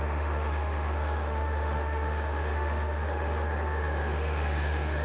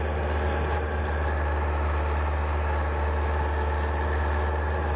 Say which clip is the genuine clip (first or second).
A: second